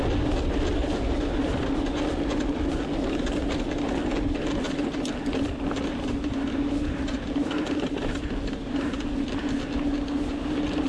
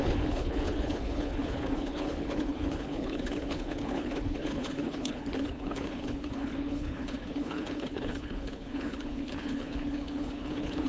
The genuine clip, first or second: first